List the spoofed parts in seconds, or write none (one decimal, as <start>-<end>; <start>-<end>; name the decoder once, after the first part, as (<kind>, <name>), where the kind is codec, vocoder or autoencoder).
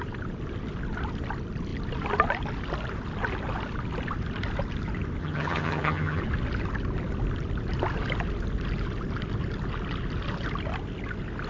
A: 5.2-6.2 (vocoder, HiFi-GAN)